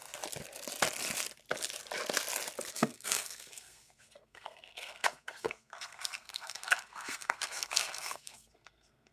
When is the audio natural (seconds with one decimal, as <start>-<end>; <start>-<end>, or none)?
0.0-2.7